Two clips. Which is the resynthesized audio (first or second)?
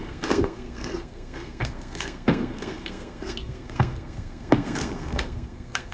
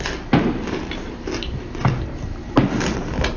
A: first